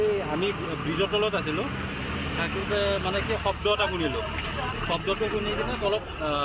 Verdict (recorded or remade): recorded